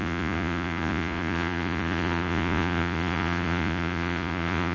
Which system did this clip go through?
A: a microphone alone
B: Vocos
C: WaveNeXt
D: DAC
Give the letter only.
B